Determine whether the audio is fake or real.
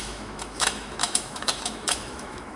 fake